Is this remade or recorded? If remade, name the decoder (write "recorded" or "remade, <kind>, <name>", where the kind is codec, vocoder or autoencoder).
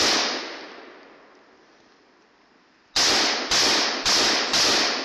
recorded